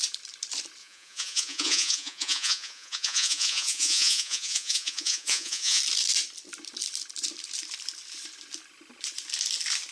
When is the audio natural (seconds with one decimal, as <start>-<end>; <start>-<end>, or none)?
0.0-0.8; 5.8-9.9